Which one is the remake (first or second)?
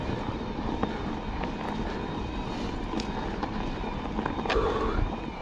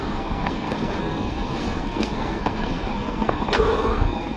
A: second